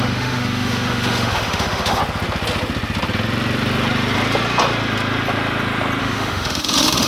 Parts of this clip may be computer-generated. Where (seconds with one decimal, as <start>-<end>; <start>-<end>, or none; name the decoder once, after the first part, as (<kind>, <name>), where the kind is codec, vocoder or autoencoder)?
0.0-2.0 (autoencoder, DAC-VAE); 6.0-7.1